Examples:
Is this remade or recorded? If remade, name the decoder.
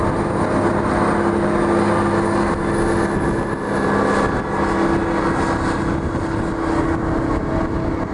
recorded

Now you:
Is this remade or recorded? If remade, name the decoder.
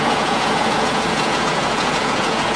remade, vocoder, Vocos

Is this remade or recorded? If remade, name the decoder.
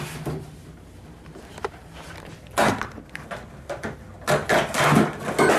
recorded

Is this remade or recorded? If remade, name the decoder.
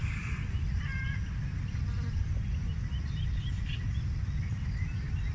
recorded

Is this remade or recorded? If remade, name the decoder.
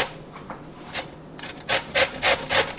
recorded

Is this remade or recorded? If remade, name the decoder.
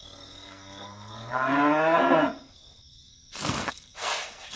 remade, codec, SNAC